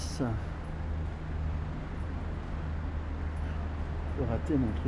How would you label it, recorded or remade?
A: recorded